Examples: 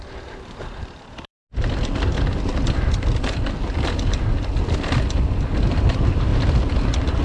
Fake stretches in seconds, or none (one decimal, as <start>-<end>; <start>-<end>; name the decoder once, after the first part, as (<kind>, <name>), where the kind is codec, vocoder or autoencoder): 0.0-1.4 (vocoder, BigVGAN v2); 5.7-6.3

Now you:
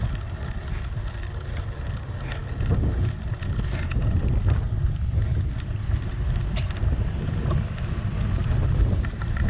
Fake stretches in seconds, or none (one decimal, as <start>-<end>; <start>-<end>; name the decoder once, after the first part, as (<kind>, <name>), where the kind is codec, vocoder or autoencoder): 8.4-9.5 (vocoder, BigVGAN v2)

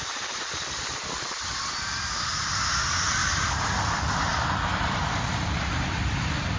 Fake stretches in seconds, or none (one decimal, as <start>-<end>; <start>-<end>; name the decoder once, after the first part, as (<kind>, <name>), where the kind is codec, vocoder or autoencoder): 0.0-3.2 (vocoder, BigVGAN v2); 3.8-6.6

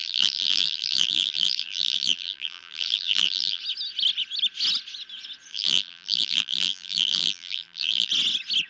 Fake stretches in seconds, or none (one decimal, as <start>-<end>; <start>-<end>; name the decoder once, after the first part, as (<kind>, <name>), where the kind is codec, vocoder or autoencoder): 0.0-3.6 (vocoder, BigVGAN v2); 5.5-8.1

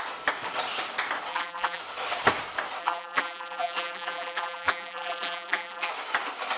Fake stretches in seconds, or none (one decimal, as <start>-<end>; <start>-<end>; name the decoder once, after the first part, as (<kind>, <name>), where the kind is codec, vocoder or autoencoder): 1.3-1.8 (vocoder, BigVGAN v2); 2.8-5.9

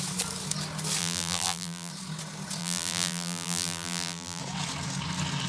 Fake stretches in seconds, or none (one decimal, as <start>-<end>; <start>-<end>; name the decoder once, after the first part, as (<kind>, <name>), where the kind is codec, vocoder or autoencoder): 1.0-1.9 (vocoder, BigVGAN v2); 2.6-4.4

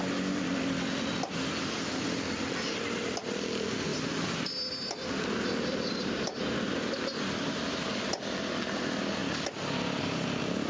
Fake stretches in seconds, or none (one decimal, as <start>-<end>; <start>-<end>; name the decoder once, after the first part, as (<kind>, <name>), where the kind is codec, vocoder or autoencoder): 3.9-6.4 (vocoder, BigVGAN v2)